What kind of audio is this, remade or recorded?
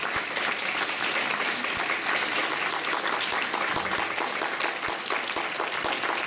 recorded